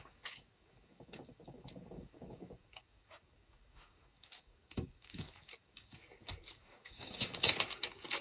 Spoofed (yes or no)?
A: yes